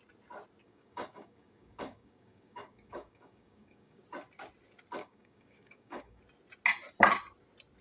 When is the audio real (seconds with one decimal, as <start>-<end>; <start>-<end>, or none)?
0.0-0.6; 4.0-5.0; 6.2-7.8